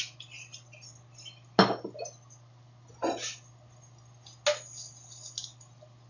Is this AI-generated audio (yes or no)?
no